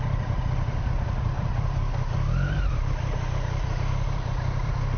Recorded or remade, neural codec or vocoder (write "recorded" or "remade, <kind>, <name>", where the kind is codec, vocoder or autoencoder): remade, vocoder, BigVGAN v2